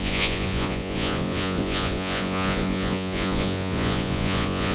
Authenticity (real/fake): fake